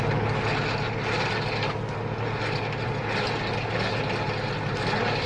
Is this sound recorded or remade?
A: recorded